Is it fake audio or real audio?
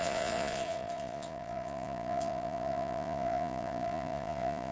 fake